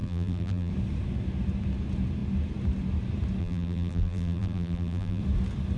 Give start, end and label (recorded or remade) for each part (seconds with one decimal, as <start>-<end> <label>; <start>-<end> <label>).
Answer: 0.0-0.7 remade; 0.7-3.4 recorded; 3.4-5.2 remade; 5.2-5.8 recorded